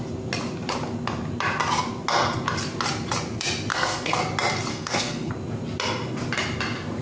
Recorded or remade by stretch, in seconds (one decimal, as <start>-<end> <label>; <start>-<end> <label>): 0.0-3.7 recorded; 3.7-4.2 remade; 4.2-4.7 recorded; 4.7-5.3 remade; 5.3-7.0 recorded

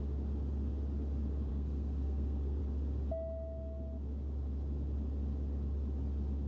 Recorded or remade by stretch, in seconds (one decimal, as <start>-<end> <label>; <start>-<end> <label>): 0.0-1.5 recorded; 1.5-2.6 remade; 2.6-6.5 recorded